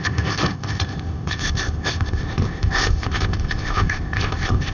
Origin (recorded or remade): remade